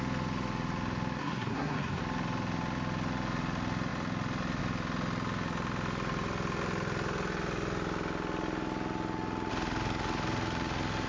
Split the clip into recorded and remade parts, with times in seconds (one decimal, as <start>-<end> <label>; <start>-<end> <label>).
0.0-1.2 recorded; 1.2-2.0 remade; 2.0-11.1 recorded